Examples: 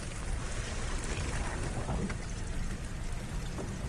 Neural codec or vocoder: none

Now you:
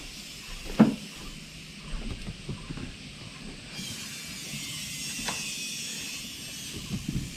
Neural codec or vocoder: none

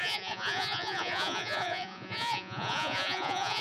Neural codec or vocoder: vocoder, Vocos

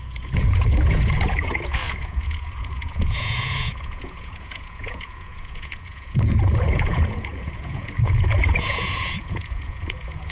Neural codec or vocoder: vocoder, Vocos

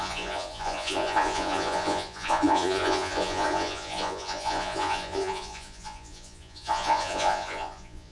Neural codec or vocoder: vocoder, Vocos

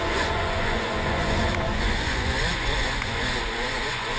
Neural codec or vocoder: vocoder, Vocos